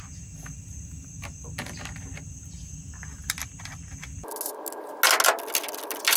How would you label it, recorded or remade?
recorded